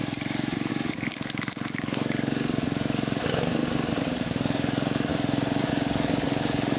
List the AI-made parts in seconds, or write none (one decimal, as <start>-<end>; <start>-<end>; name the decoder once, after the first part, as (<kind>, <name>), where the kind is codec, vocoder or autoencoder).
0.7-5.1 (codec, DAC); 5.6-6.8